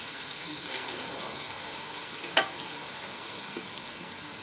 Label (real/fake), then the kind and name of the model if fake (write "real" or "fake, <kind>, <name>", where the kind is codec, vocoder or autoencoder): fake, codec, SNAC